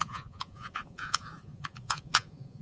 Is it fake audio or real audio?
fake